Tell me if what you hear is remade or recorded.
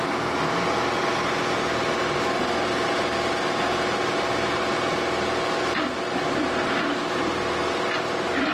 recorded